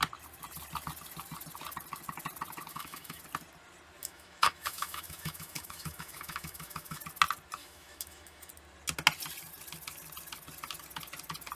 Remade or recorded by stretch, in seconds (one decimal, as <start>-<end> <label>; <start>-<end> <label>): 0.0-2.7 recorded; 2.7-3.2 remade; 3.2-4.0 recorded; 4.0-7.0 remade; 7.0-7.6 recorded; 7.6-8.5 remade; 8.5-11.6 recorded